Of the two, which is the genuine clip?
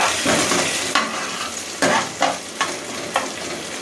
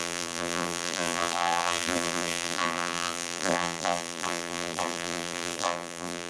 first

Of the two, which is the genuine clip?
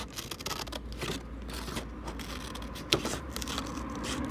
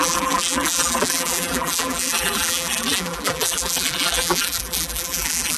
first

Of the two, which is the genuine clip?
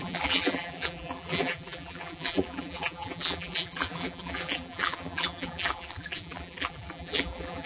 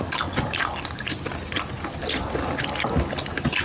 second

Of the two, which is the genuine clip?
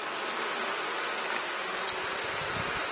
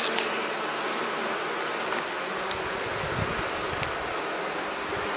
second